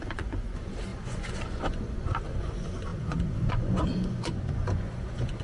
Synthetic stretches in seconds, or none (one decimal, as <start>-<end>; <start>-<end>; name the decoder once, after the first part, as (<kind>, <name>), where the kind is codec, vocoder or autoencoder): 0.0-5.4 (vocoder, Vocos)